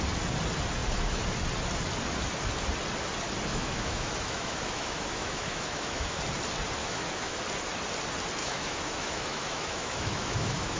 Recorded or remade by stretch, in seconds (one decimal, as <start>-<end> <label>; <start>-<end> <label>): 0.0-3.5 recorded; 3.5-6.2 remade; 6.2-6.8 recorded; 6.8-7.4 remade; 7.4-8.4 recorded; 8.4-10.8 remade